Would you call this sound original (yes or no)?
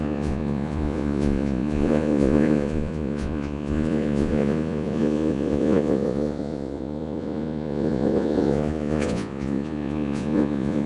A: no